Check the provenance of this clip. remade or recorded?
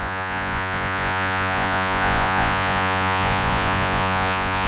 remade